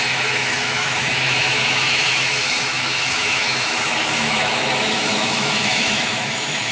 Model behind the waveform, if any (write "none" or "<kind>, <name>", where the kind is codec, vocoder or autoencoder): autoencoder, DAC-VAE